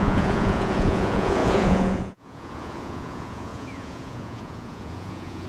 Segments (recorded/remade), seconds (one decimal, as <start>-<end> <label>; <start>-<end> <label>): 0.0-5.5 remade